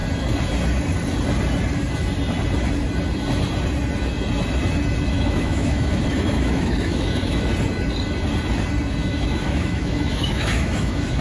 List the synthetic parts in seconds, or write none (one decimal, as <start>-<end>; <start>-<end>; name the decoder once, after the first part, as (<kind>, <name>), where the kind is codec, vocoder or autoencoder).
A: 5.1-7.5 (autoencoder, DAC-VAE); 9.1-11.2